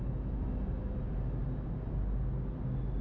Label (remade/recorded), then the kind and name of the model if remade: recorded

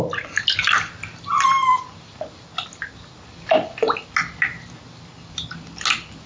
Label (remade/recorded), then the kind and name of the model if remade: recorded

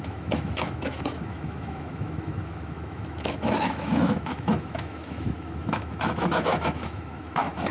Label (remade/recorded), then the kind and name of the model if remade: remade, autoencoder, DAC-VAE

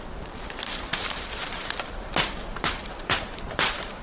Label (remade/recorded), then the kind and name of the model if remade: remade, vocoder, BigVGAN v2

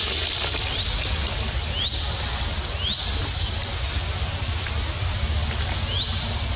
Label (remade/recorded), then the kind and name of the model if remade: recorded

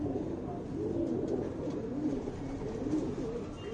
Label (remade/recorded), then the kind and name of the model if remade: recorded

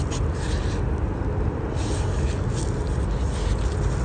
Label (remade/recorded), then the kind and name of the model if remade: recorded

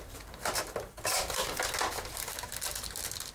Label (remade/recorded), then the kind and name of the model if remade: recorded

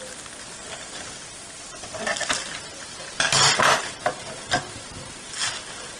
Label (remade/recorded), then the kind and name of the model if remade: recorded